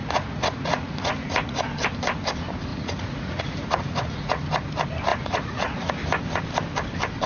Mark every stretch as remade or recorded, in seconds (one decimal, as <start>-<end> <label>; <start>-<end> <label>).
0.0-1.6 remade; 1.6-2.7 recorded; 2.7-4.4 remade; 4.4-5.1 recorded; 5.1-5.9 remade; 5.9-7.3 recorded